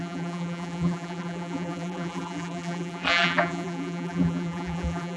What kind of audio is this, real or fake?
fake